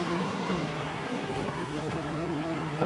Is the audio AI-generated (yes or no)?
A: yes